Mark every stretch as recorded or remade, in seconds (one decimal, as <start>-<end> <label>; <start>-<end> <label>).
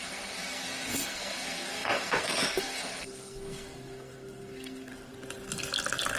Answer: 0.0-4.9 remade; 4.9-6.2 recorded